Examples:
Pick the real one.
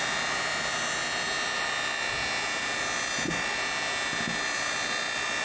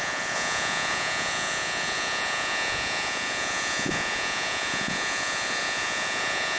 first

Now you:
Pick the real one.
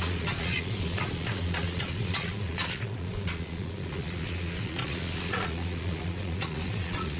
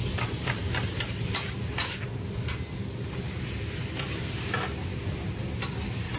second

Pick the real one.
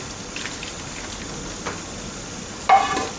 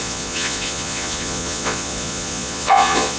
first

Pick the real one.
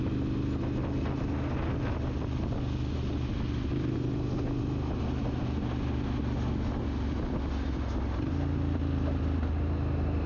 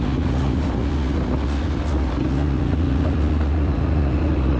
first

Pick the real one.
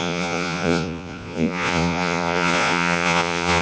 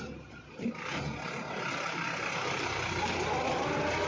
second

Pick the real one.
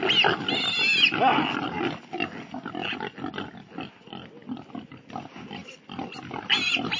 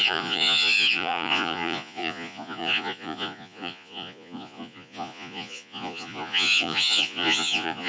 first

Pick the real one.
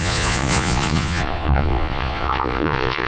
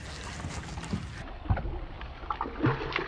second